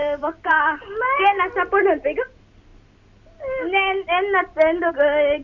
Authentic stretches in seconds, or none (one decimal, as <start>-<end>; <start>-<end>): 0.8-5.4